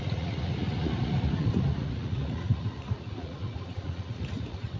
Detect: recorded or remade remade